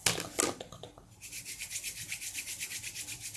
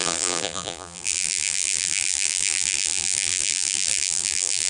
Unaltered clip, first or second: first